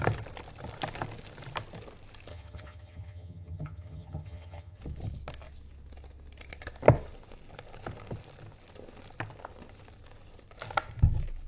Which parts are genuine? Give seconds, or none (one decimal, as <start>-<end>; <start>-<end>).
0.0-2.3; 4.8-11.5